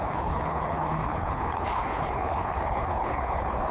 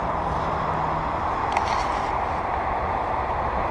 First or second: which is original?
second